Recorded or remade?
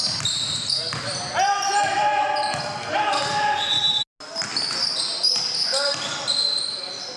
recorded